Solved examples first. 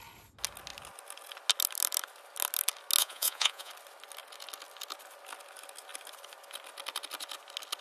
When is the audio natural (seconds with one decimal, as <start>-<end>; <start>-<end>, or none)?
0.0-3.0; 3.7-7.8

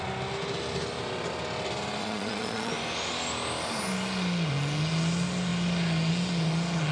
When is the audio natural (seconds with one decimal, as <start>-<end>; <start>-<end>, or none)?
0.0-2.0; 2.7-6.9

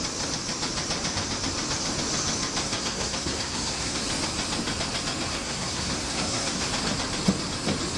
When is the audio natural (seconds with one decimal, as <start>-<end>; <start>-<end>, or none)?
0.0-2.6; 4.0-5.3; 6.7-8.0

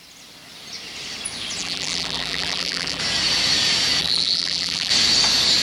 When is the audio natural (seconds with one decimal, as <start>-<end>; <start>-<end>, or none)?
0.0-1.6; 3.0-4.0; 4.9-5.6

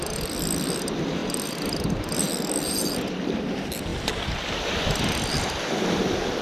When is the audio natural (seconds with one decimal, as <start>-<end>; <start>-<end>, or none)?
3.9-5.3

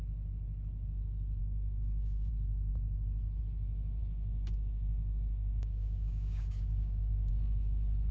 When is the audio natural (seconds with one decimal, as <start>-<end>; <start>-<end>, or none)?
0.0-1.4; 2.3-4.0; 7.3-8.1